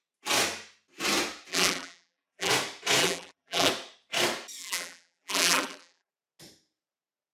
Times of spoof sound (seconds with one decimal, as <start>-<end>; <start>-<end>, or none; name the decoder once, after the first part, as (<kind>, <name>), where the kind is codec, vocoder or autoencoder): 1.5-2.5 (vocoder, BigVGAN v2); 3.0-3.7; 4.6-6.1